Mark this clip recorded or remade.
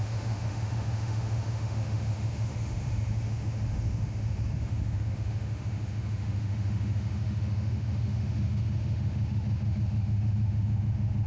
remade